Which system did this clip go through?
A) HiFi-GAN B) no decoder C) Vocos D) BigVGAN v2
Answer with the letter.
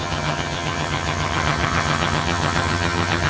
A